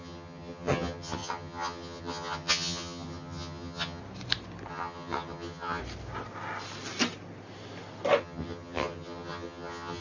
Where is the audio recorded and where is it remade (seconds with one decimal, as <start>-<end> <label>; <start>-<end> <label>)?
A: 0.0-4.0 remade; 4.0-4.7 recorded; 4.7-5.8 remade; 5.8-8.2 recorded; 8.2-10.0 remade

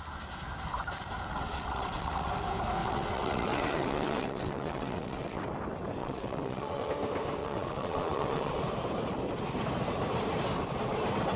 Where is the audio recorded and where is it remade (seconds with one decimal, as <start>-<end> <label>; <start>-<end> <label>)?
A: 0.0-1.3 recorded; 1.3-2.3 remade; 2.3-2.8 recorded; 2.8-5.4 remade; 5.4-6.0 recorded; 6.0-6.9 remade; 6.9-7.4 recorded; 7.4-8.6 remade; 8.6-11.4 recorded

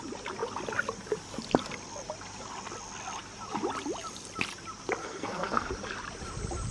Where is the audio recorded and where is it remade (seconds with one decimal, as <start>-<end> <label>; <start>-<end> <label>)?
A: 0.0-5.0 recorded; 5.0-5.7 remade; 5.7-6.7 recorded

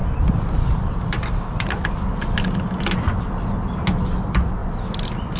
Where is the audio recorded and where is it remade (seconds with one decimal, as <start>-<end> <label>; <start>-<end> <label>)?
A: 0.0-3.2 remade; 3.2-5.4 recorded

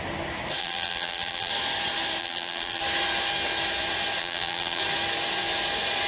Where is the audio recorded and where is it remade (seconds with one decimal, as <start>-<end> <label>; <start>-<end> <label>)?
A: 0.0-0.6 recorded; 0.6-1.5 remade; 1.5-2.2 recorded; 2.2-2.8 remade; 2.8-4.2 recorded; 4.2-4.8 remade; 4.8-6.1 recorded